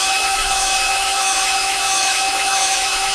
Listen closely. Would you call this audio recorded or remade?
remade